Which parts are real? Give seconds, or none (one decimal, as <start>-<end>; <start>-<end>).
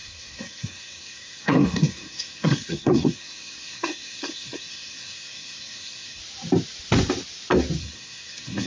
6.2-7.8